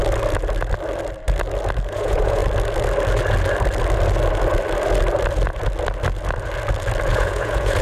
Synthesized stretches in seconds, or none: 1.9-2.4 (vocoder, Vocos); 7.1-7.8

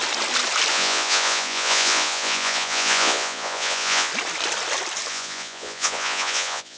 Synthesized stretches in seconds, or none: 0.7-4.1 (vocoder, Vocos); 5.1-6.8